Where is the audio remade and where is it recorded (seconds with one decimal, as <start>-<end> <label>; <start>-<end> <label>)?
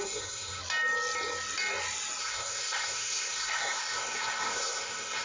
0.0-0.6 remade; 0.6-2.2 recorded; 2.2-5.2 remade